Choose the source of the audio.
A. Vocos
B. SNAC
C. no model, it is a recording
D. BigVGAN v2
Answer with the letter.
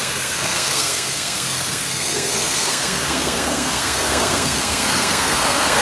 B